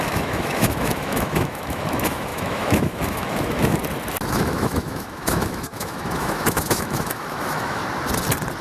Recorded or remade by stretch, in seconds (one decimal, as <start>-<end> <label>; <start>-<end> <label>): 0.0-3.8 remade; 3.8-4.3 recorded; 4.3-7.8 remade; 7.8-8.6 recorded